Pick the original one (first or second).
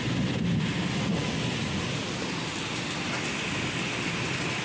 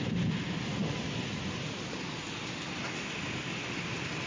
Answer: first